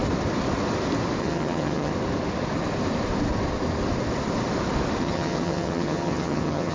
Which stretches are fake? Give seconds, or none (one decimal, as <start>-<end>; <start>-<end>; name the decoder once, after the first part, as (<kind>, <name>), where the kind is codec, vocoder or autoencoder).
1.2-1.9 (vocoder, HiFi-GAN); 5.0-6.7